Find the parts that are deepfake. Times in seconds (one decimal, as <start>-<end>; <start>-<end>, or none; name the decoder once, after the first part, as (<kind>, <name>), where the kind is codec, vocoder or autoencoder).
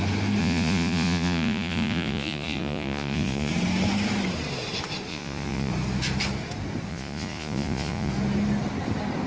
0.4-3.5 (vocoder, Vocos); 5.1-5.7; 6.9-8.1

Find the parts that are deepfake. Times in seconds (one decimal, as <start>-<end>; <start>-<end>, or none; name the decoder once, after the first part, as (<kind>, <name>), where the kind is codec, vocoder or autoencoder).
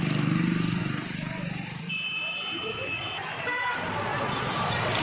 0.0-5.0 (vocoder, BigVGAN v2)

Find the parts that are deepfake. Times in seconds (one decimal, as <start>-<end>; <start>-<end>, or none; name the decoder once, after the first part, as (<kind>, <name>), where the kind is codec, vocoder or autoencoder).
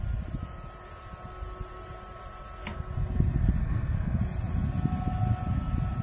3.6-4.2 (codec, SNAC)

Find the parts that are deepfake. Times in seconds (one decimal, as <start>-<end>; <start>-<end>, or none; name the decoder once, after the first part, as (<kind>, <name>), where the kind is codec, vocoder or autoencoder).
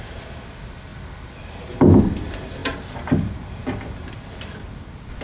none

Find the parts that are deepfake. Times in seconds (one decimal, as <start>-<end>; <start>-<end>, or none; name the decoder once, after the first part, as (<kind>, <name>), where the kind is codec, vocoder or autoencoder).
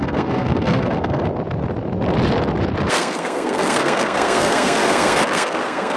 0.0-1.3 (codec, SNAC); 2.9-6.0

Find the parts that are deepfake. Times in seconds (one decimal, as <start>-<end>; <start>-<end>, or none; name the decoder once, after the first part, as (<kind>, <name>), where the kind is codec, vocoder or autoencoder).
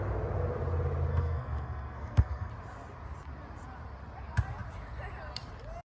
1.1-2.5 (codec, SNAC)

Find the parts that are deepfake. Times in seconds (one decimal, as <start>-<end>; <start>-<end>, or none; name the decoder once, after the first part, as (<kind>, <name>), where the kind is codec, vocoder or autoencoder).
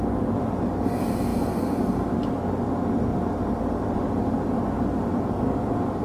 3.1-4.1 (vocoder, BigVGAN v2)